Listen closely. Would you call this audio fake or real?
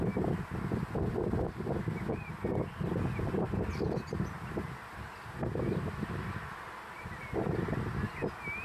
real